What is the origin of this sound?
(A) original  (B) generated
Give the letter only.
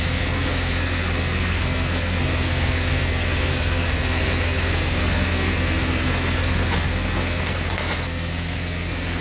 B